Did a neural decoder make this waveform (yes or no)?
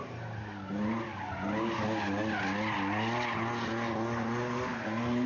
no